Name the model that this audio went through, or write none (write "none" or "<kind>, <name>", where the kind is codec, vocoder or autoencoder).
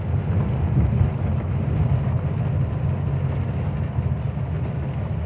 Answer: none